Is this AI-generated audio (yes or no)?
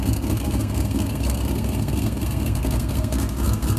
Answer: yes